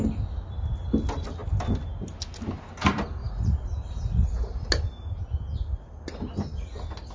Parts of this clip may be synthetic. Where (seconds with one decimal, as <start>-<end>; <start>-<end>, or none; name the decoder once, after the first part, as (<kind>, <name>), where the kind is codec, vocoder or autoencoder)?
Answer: 3.2-4.5 (vocoder, Vocos)